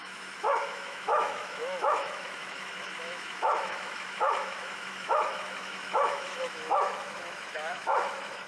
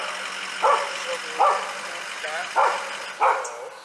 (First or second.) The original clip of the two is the second